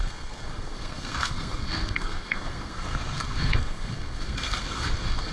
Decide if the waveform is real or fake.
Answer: fake